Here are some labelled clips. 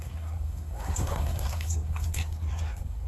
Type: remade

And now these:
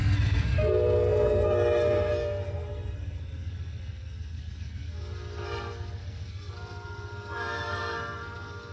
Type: remade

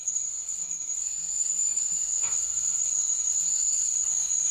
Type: remade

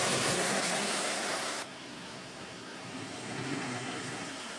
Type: remade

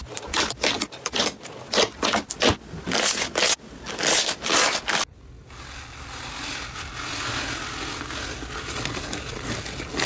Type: recorded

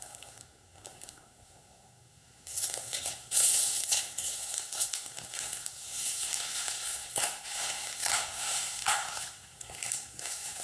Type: remade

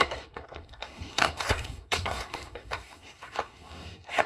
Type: remade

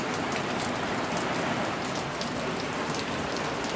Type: recorded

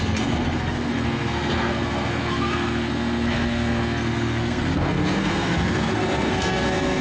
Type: remade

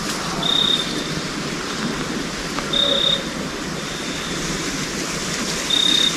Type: recorded